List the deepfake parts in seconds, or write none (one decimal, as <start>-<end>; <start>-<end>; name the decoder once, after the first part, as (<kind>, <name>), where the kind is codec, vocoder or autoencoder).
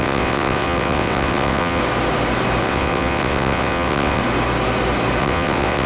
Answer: 0.0-1.8 (vocoder, WaveNeXt); 2.6-4.2; 5.2-5.9